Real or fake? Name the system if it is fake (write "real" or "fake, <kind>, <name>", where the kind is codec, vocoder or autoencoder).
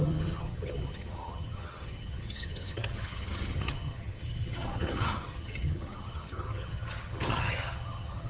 fake, vocoder, HiFi-GAN